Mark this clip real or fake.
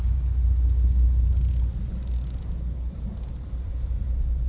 real